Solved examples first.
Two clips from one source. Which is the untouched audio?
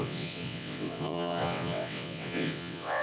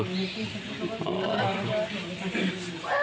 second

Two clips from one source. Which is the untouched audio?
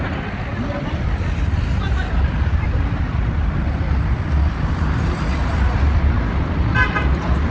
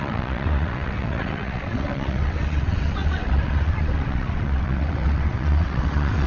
first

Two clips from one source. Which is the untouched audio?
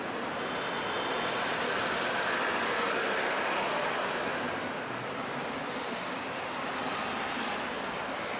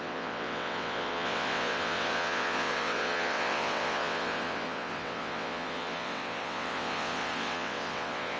first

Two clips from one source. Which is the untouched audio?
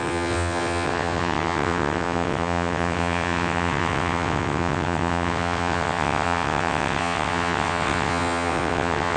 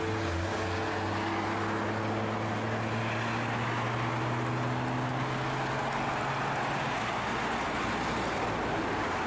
second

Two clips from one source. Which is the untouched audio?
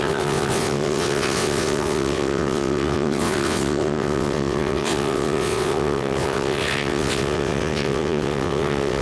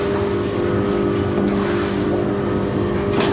second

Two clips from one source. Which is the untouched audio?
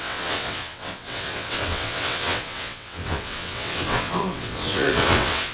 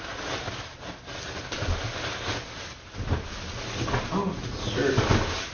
second